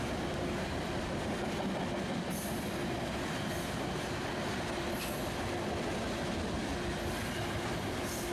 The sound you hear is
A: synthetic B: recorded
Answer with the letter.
B